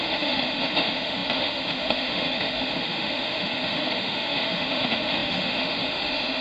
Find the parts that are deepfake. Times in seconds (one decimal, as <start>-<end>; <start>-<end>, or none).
0.0-6.4